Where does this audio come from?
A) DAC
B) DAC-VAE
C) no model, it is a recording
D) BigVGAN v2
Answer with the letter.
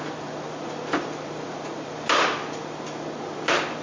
C